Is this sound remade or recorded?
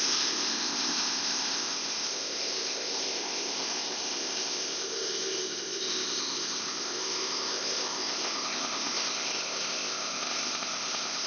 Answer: remade